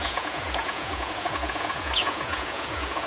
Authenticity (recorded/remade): remade